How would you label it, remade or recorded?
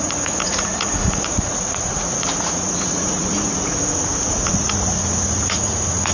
remade